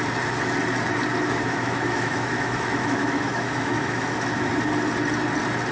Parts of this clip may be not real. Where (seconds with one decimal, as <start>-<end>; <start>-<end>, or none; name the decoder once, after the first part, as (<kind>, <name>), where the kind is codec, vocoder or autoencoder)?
1.1-4.5 (autoencoder, DAC-VAE)